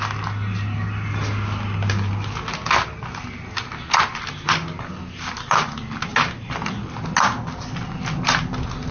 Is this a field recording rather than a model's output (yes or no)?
yes